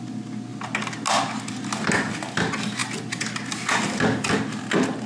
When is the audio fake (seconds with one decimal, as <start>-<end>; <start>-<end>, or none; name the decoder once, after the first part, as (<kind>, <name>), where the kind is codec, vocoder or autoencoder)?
none